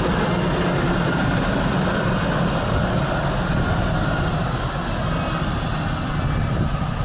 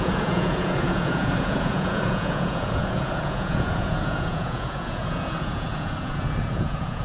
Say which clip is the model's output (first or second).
second